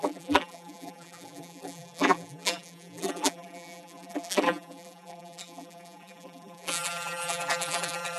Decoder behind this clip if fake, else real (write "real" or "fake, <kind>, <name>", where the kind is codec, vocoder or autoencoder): fake, vocoder, BigVGAN v2